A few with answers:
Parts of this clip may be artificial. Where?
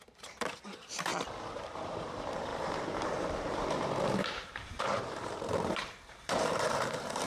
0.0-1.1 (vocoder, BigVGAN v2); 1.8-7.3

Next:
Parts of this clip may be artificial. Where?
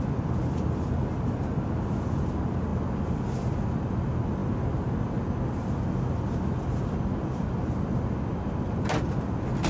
none